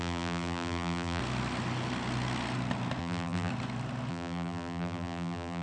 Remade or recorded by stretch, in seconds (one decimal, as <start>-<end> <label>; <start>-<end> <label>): 0.0-1.2 remade; 1.2-3.0 recorded; 3.0-3.5 remade; 3.5-4.1 recorded; 4.1-5.6 remade